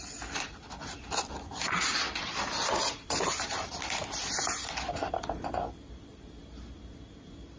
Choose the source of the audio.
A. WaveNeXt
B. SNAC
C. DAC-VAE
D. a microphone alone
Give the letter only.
D